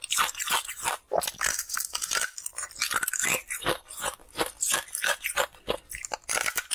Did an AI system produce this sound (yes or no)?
no